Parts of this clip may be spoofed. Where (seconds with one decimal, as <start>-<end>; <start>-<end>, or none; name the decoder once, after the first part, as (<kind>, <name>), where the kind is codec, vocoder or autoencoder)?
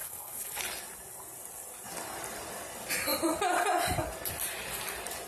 0.0-0.6 (codec, HILCodec)